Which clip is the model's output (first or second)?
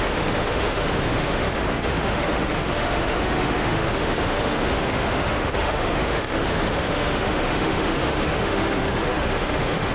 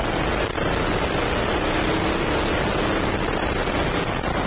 first